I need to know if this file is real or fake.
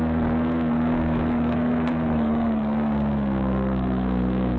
fake